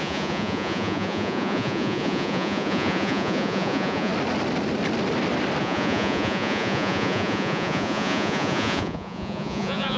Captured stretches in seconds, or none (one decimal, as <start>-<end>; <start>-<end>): 4.1-5.6